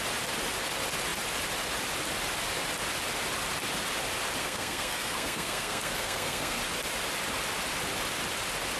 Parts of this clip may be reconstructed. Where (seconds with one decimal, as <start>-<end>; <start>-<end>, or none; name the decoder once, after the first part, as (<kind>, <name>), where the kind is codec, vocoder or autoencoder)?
4.4-6.6 (codec, SNAC)